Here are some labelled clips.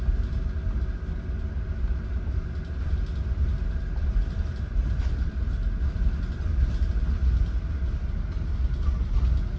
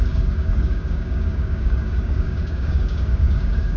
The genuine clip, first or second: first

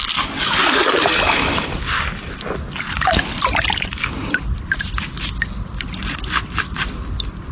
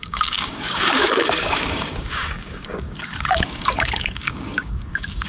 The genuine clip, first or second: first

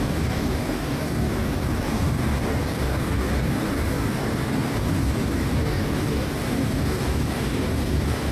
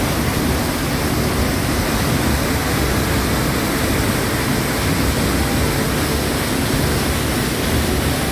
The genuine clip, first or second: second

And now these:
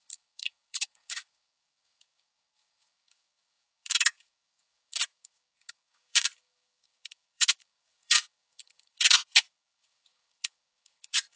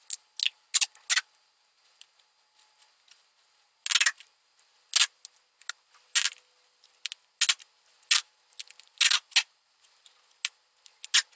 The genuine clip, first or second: second